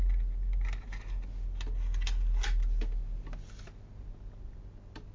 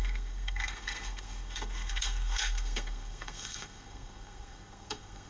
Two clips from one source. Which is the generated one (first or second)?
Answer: second